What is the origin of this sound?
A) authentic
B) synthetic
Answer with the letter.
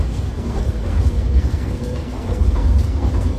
B